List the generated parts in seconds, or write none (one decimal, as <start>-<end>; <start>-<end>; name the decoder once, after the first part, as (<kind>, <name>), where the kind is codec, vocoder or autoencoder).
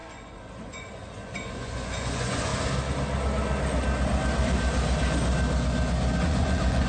0.0-2.5 (vocoder, Vocos); 6.2-6.9